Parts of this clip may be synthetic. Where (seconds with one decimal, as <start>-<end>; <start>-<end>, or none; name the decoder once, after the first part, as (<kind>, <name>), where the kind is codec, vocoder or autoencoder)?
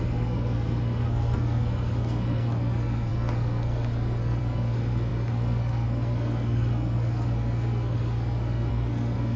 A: 0.0-9.4 (codec, SNAC)